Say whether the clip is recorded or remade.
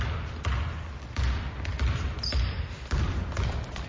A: recorded